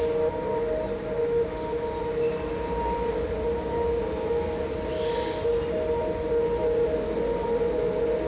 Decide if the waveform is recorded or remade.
recorded